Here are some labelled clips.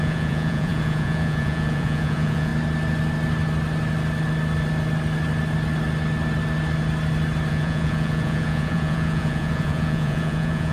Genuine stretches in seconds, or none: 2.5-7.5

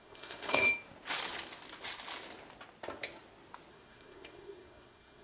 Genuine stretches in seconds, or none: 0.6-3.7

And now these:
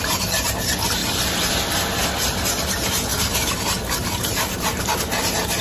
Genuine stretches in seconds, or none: 1.0-2.2

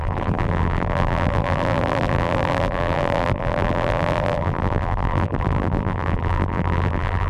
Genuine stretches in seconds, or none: none

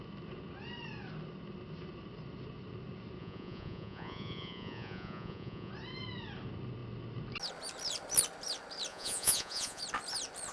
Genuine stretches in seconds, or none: 0.0-3.2; 5.7-8.9; 9.8-10.5

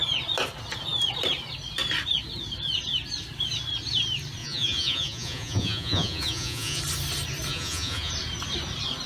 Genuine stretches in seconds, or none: 0.0-4.4; 6.8-7.5; 8.1-9.1

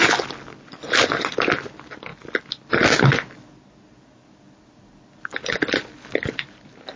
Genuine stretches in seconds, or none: 0.0-7.0

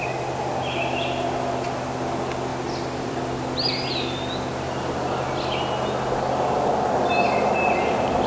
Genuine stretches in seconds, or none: 0.0-2.5; 3.2-8.3